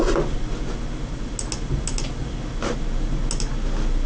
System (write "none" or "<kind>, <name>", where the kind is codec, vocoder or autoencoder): none